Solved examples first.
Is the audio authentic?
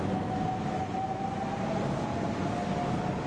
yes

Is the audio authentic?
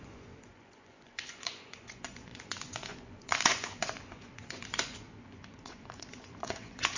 no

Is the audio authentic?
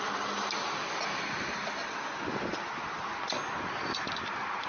yes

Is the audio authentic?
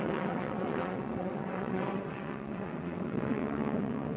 no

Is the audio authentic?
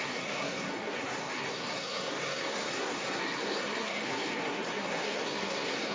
no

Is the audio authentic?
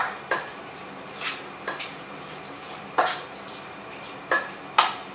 no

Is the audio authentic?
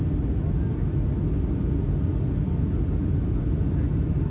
yes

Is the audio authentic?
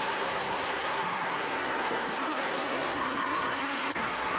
no